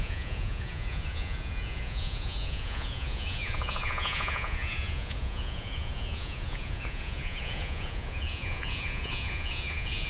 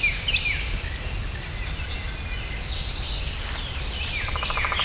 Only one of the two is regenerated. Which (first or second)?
first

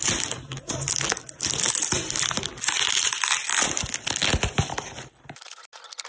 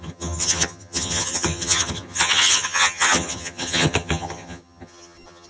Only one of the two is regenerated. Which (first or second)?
second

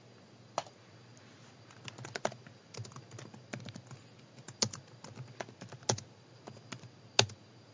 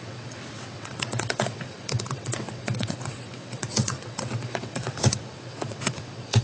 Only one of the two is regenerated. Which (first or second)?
second